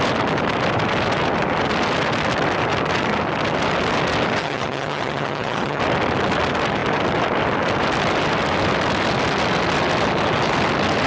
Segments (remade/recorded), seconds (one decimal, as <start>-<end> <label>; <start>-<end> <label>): 0.0-4.4 recorded; 4.4-5.8 remade; 5.8-11.1 recorded

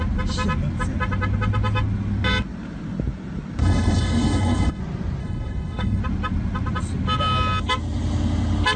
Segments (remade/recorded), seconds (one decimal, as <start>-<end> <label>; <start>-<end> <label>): 0.0-3.6 recorded; 3.6-4.8 remade; 4.8-5.2 recorded; 5.2-6.0 remade; 6.0-8.8 recorded

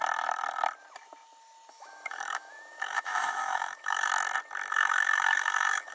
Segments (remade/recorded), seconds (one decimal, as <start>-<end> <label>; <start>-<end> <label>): 0.0-1.7 recorded; 1.7-4.1 remade; 4.1-4.7 recorded; 4.7-5.9 remade

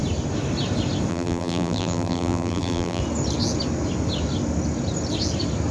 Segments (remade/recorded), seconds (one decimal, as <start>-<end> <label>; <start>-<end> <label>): 0.0-1.1 recorded; 1.1-3.0 remade; 3.0-5.7 recorded

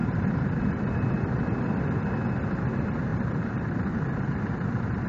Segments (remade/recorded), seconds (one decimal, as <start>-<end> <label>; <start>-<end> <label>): 0.0-0.6 remade; 0.6-3.1 recorded; 3.1-5.1 remade

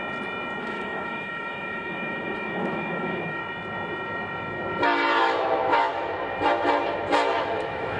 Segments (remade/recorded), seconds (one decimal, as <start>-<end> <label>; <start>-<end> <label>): 0.0-0.6 recorded; 0.6-3.4 remade; 3.4-5.2 recorded; 5.2-5.9 remade; 5.9-7.4 recorded; 7.4-8.0 remade

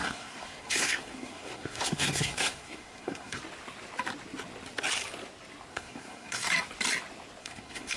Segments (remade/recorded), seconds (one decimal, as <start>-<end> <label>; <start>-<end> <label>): 0.0-3.4 remade; 3.4-5.7 recorded; 5.7-6.5 remade; 6.5-7.4 recorded; 7.4-8.0 remade

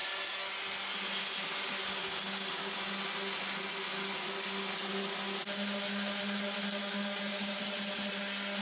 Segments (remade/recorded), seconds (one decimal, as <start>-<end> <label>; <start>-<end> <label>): 0.0-2.0 recorded; 2.0-2.7 remade; 2.7-6.8 recorded; 6.8-7.6 remade; 7.6-8.6 recorded